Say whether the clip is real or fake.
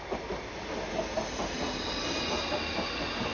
real